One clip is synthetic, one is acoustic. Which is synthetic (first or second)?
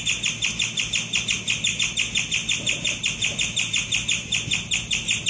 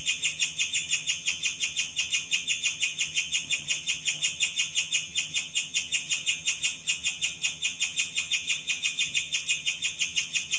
second